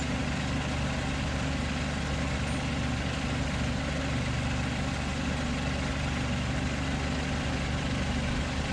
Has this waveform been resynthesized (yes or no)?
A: no